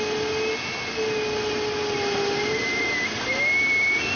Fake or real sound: real